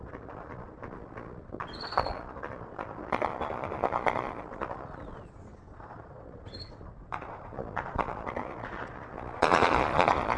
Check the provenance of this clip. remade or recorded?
remade